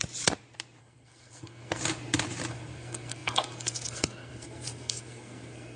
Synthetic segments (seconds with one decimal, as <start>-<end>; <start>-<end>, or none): 0.8-1.8; 2.5-5.8